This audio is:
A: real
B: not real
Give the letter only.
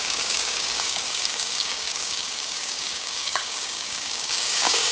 B